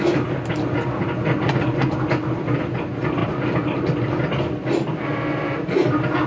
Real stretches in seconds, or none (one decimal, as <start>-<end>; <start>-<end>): 0.0-6.3